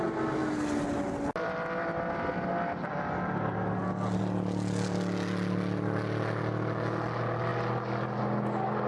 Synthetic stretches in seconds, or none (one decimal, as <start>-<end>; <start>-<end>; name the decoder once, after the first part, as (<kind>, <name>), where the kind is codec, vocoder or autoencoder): none